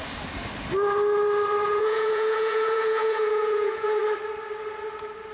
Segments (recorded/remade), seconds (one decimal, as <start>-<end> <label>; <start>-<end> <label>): 0.0-1.7 recorded; 1.7-4.0 remade; 4.0-5.3 recorded